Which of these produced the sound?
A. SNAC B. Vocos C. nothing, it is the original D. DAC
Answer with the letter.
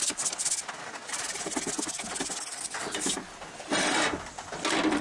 C